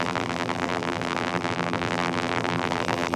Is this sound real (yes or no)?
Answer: no